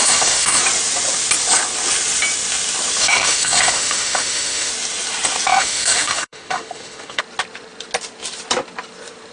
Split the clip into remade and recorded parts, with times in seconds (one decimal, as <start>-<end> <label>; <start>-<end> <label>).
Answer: 0.0-0.6 remade; 0.6-3.0 recorded; 3.0-4.7 remade; 4.7-5.5 recorded; 5.5-7.2 remade; 7.2-9.3 recorded